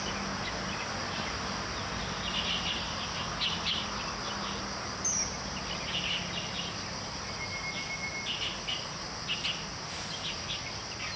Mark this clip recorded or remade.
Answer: recorded